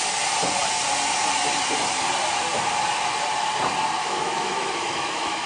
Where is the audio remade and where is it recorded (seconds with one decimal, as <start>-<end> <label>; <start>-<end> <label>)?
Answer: 0.0-4.0 recorded; 4.0-5.5 remade